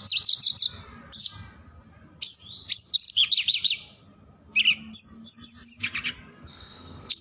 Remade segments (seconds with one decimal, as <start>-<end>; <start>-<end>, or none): 6.3-7.2

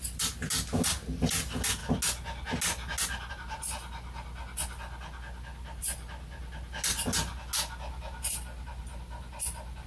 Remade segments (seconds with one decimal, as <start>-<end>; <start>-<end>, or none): none

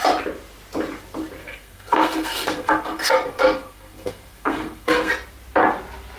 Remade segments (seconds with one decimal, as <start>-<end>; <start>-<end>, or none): 1.4-5.1